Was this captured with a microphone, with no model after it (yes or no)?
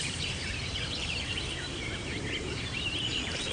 no